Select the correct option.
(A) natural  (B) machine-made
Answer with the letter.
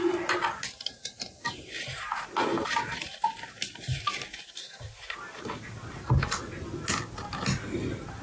A